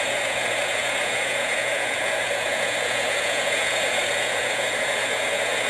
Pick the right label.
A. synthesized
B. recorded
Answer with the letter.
A